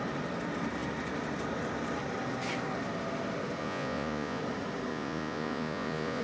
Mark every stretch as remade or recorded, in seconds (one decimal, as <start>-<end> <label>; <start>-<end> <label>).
0.0-3.6 recorded; 3.6-4.4 remade; 4.4-4.9 recorded; 4.9-6.2 remade